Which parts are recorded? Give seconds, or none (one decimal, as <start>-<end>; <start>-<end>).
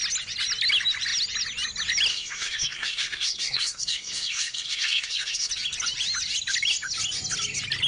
0.0-2.1; 5.5-7.9